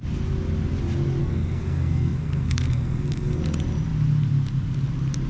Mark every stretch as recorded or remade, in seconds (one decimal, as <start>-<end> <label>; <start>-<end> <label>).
0.0-1.2 recorded; 1.2-3.4 remade; 3.4-5.3 recorded